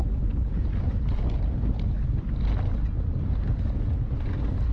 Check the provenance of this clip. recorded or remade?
recorded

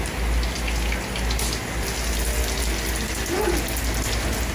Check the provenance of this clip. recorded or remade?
recorded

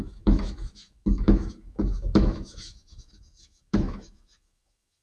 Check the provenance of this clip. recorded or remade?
remade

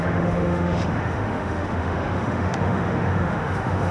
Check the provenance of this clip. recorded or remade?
remade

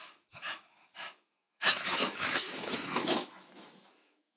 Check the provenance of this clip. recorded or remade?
remade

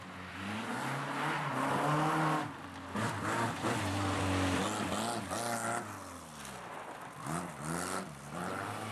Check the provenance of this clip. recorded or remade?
recorded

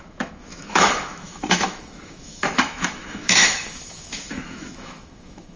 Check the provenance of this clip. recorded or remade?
remade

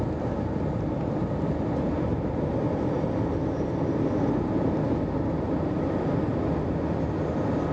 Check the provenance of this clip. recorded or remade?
recorded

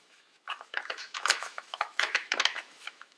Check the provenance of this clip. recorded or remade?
remade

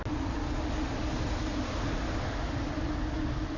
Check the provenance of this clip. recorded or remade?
recorded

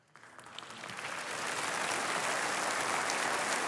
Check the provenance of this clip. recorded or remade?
recorded